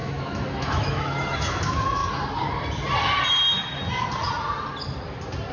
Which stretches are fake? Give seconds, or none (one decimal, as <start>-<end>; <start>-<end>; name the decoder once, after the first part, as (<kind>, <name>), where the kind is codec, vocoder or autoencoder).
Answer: 0.0-2.0 (autoencoder, DAC-VAE)